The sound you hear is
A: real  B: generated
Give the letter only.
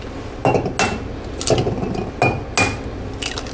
A